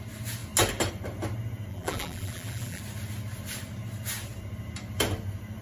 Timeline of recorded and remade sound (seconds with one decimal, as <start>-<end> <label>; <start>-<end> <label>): 0.0-1.7 recorded; 1.7-2.8 remade; 2.8-5.6 recorded